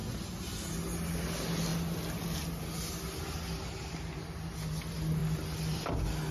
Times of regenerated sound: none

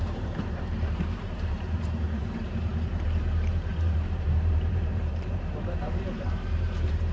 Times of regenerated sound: 0.0-7.1 (vocoder, BigVGAN v2)

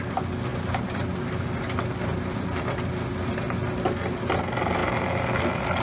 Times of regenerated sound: none

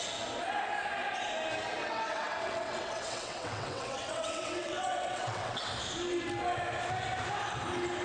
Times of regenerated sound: 1.8-5.7 (vocoder, WaveNeXt)

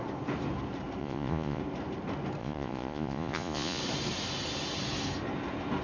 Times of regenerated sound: 1.0-1.6 (vocoder, Vocos); 2.4-3.8

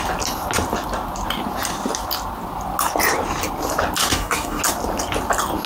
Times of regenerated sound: 4.0-4.6 (codec, DAC)

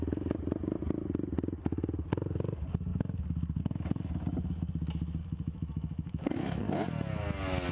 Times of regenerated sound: 5.2-6.6 (autoencoder, DAC-VAE)

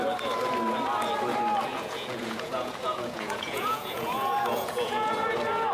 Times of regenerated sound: 1.7-5.1 (vocoder, Vocos)